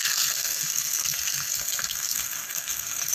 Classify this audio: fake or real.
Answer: fake